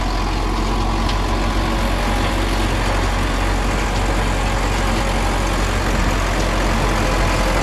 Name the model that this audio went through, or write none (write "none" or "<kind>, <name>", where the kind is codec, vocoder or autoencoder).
none